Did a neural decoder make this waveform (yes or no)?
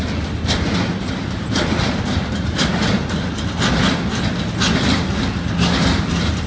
no